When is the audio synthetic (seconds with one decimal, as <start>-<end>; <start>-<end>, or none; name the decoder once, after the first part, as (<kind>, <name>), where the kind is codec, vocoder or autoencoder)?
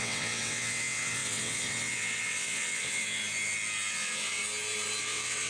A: 0.0-3.2 (vocoder, WaveNeXt); 3.9-4.4; 5.0-5.5